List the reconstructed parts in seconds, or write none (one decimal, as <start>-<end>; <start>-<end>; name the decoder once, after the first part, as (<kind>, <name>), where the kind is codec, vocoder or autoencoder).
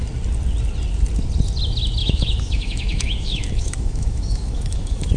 2.0-5.2 (autoencoder, DAC-VAE)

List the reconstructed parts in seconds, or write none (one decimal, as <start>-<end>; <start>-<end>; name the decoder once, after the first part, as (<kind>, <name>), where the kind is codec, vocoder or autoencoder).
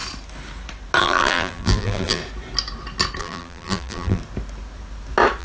1.0-2.2 (vocoder, BigVGAN v2); 3.2-4.2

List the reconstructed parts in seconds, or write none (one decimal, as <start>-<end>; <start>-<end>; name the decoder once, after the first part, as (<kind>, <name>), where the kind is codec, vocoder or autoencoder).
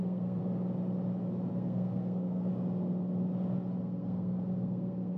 0.0-0.4 (codec, SNAC); 1.5-2.5; 3.8-5.2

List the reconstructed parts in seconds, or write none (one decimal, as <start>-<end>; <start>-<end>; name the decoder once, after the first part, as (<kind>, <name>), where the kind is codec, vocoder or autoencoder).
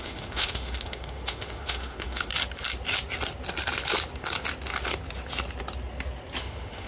0.0-2.3 (autoencoder, DAC-VAE); 6.4-6.9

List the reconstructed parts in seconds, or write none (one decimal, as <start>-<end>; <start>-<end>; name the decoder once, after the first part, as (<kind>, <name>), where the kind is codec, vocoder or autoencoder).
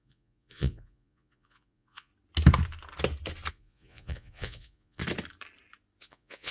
0.0-2.1 (vocoder, Vocos); 3.5-5.0; 6.0-6.5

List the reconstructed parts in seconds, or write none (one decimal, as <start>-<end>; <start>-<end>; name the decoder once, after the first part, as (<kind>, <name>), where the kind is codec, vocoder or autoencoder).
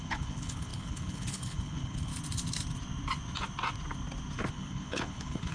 0.0-2.1 (codec, HILCodec); 4.5-5.5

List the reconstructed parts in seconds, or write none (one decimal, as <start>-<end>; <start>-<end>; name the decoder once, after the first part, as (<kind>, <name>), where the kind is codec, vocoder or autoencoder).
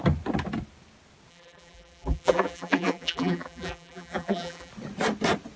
1.3-4.7 (vocoder, BigVGAN v2)